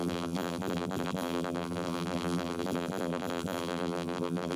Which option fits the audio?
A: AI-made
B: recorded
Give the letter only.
A